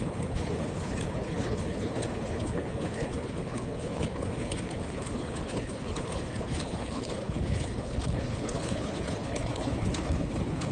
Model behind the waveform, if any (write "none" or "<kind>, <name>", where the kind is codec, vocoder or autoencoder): codec, HILCodec